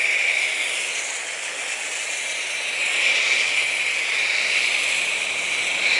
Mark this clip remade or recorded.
recorded